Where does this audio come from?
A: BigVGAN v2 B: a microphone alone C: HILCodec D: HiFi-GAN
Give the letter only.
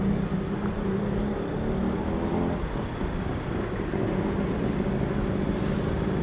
B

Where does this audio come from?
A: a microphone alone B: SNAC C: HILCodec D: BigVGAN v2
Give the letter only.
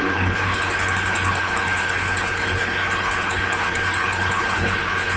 C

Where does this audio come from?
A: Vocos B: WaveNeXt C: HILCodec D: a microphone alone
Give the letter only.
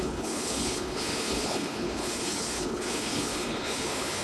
C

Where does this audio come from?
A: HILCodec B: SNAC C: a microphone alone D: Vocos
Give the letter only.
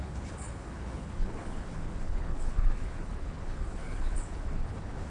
A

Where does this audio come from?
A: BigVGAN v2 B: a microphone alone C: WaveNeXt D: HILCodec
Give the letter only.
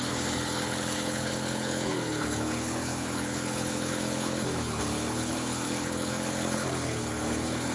D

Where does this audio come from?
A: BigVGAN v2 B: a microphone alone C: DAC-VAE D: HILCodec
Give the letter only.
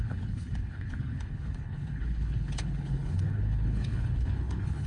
D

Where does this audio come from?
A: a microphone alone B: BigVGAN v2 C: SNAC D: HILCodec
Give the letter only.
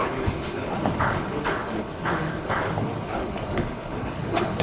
D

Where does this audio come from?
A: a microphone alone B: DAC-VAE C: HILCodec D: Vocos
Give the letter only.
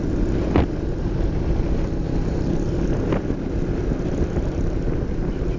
A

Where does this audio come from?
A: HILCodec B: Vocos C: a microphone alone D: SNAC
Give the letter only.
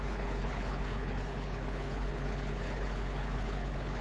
A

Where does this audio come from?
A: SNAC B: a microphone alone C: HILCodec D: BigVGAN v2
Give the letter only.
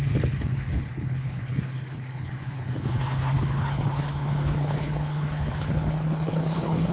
C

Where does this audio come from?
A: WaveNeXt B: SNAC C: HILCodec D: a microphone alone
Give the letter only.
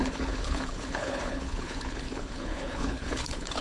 C